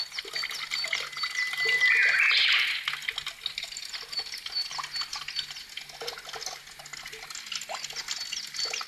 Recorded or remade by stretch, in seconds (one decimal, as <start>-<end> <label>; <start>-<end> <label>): 0.0-8.9 recorded